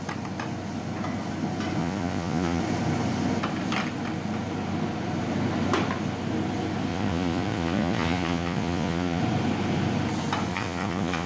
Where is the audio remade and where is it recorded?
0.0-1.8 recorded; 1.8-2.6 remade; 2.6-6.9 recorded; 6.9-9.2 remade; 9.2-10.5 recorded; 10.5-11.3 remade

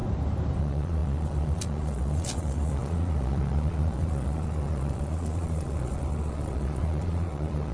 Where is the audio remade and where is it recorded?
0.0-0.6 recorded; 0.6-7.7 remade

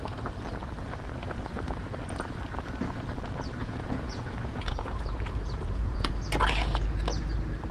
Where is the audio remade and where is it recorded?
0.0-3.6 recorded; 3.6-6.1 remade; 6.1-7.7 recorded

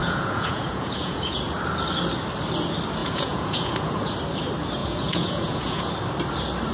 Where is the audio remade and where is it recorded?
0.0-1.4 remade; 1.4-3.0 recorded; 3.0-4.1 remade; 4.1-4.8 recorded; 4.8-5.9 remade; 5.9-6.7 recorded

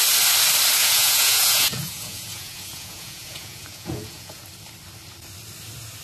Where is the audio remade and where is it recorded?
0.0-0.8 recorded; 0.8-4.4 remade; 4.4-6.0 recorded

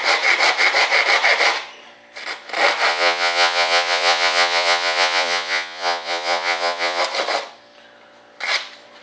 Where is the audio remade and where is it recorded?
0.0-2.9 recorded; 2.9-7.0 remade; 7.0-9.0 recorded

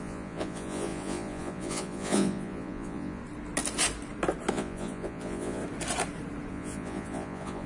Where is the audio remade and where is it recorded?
0.0-3.2 remade; 3.2-4.5 recorded; 4.5-5.6 remade; 5.6-6.5 recorded; 6.5-7.7 remade

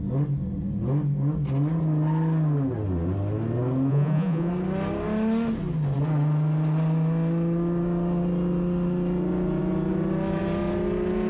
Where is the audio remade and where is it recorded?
0.0-3.9 recorded; 3.9-4.5 remade; 4.5-11.3 recorded